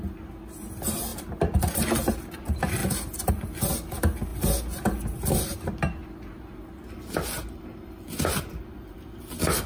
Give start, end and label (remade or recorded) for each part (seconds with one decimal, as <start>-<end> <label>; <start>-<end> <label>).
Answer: 0.0-9.7 recorded